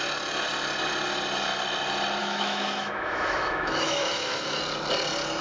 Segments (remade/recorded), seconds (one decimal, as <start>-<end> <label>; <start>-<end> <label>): 0.0-2.2 recorded; 2.2-4.6 remade; 4.6-5.4 recorded